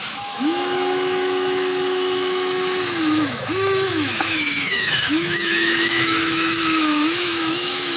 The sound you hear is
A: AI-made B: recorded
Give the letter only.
A